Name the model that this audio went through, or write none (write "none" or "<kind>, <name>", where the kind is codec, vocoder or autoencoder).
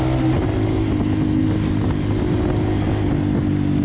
none